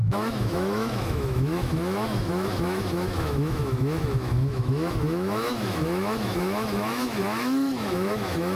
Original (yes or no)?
no